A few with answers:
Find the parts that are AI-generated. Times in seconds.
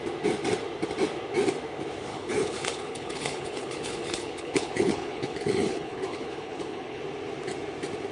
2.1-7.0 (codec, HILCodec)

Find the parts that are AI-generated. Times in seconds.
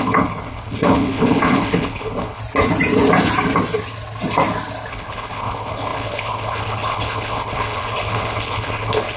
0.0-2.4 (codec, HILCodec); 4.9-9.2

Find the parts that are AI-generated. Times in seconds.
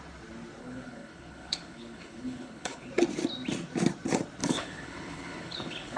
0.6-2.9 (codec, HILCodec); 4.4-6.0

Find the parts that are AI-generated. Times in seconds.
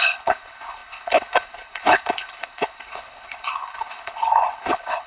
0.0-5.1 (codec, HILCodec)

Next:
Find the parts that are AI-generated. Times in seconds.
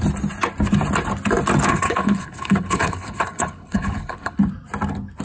1.7-4.4 (codec, HILCodec)